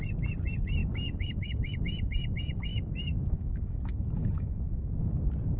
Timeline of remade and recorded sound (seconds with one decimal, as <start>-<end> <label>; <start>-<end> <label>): 0.0-0.8 recorded; 0.8-1.5 remade; 1.5-2.7 recorded; 2.7-4.9 remade; 4.9-5.6 recorded